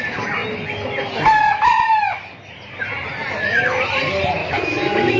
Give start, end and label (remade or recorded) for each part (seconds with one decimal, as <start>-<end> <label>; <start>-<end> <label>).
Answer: 0.0-4.4 recorded; 4.4-5.2 remade